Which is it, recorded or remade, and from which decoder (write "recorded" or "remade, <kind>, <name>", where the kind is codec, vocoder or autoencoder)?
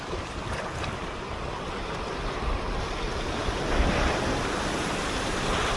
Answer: recorded